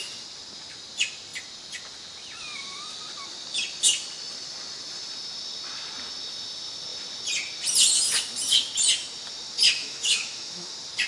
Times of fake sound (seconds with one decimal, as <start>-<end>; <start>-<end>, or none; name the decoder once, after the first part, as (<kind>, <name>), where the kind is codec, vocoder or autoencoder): 9.8-10.7 (autoencoder, DAC-VAE)